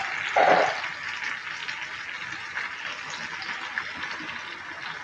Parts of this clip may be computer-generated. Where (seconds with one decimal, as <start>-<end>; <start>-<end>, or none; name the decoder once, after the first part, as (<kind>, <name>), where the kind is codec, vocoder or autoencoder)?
none